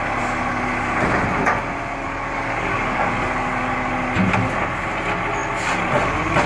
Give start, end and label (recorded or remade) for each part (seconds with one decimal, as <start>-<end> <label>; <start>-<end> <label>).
0.0-1.9 recorded; 1.9-3.9 remade; 3.9-6.5 recorded